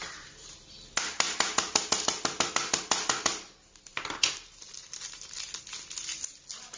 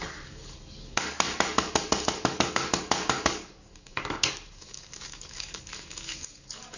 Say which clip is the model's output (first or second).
second